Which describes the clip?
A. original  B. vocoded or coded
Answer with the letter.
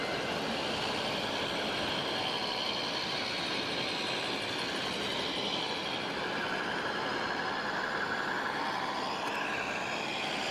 A